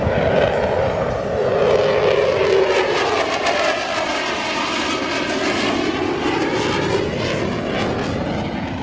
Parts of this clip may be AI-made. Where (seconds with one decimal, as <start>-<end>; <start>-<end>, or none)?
none